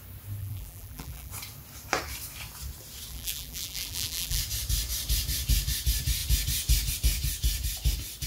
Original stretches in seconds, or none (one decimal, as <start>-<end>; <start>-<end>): 0.0-0.4; 1.3-3.1; 4.4-8.3